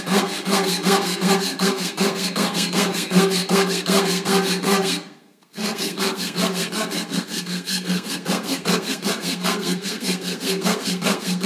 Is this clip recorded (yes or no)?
no